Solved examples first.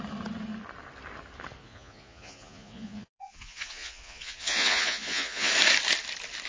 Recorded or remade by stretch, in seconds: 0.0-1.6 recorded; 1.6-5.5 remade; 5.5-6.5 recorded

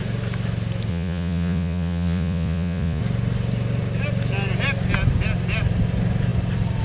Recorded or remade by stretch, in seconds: 0.0-0.9 recorded; 0.9-3.0 remade; 3.0-6.8 recorded

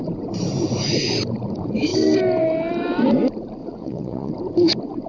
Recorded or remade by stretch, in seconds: 0.0-3.6 recorded; 3.6-4.3 remade; 4.3-5.1 recorded

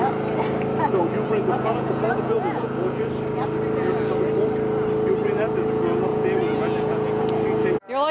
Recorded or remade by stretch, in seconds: 0.0-0.9 recorded; 0.9-3.0 remade; 3.0-6.1 recorded; 6.1-7.2 remade; 7.2-8.1 recorded

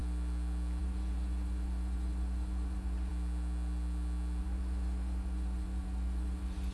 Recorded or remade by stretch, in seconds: 0.0-0.8 recorded; 0.8-3.1 remade; 3.1-4.4 recorded; 4.4-6.7 remade

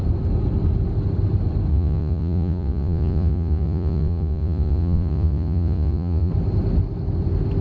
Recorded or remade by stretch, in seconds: 0.0-1.7 recorded; 1.7-6.3 remade; 6.3-7.6 recorded